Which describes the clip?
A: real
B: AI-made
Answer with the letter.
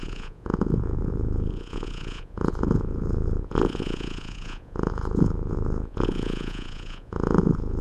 B